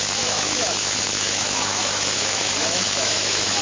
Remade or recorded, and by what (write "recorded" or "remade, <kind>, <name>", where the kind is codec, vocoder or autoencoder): remade, autoencoder, DAC-VAE